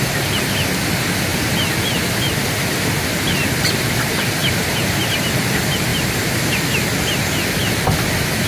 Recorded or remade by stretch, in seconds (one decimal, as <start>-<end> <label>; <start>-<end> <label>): 0.0-8.5 recorded